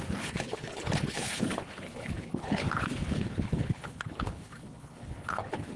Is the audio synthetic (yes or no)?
yes